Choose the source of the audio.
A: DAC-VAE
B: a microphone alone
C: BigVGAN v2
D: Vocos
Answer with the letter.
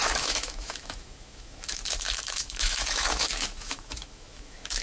A